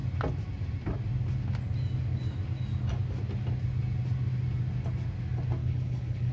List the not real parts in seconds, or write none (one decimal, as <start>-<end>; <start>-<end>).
5.6-6.3